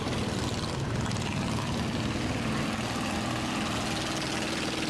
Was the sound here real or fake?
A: real